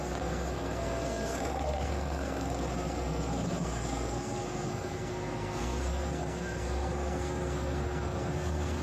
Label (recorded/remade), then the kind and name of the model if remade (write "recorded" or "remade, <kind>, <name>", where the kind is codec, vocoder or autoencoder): remade, codec, SNAC